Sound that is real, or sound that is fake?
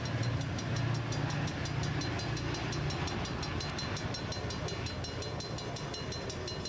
real